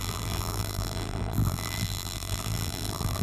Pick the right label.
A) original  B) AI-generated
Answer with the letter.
B